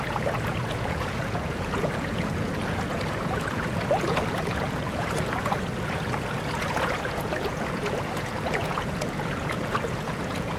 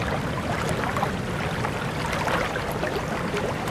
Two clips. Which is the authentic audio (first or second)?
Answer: second